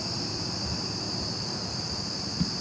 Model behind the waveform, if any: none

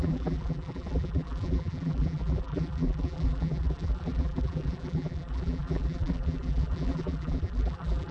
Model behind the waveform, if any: vocoder, BigVGAN v2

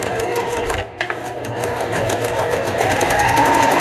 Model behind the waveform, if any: codec, DAC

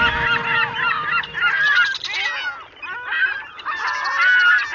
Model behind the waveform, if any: none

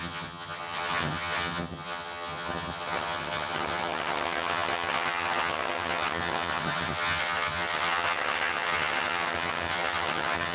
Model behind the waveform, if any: vocoder, HiFi-GAN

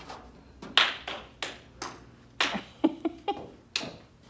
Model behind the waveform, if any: none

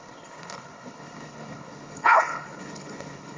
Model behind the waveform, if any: codec, HILCodec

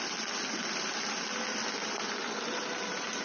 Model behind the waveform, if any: vocoder, BigVGAN v2